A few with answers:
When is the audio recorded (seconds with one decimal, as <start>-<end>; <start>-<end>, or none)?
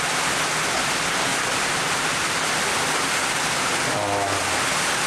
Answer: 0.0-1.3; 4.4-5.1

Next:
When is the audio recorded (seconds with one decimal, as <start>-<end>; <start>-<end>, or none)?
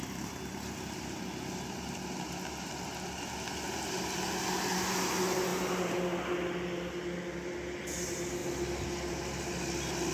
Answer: 0.0-10.1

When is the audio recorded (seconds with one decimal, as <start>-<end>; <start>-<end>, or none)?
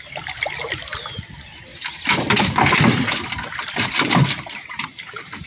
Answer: 0.0-5.5